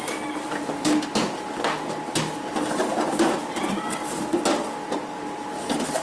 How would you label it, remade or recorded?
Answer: recorded